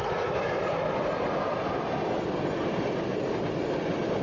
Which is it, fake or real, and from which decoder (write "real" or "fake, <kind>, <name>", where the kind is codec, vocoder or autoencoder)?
real